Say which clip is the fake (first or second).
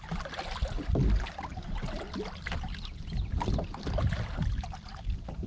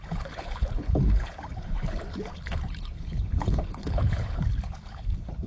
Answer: second